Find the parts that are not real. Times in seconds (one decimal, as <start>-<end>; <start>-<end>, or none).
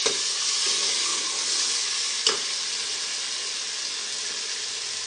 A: none